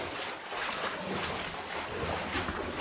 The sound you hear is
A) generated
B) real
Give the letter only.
B